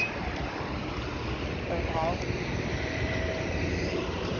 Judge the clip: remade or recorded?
recorded